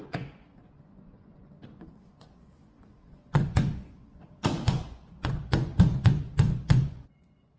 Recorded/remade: remade